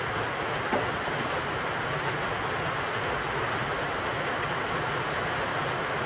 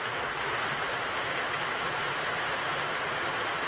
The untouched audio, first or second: second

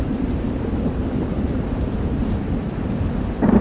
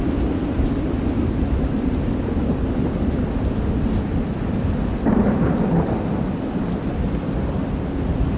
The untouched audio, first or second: second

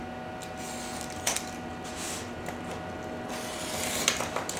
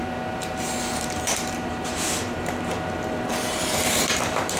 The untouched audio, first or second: first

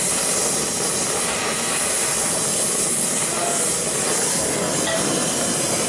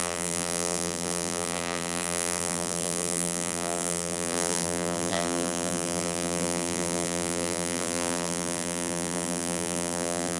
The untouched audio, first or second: first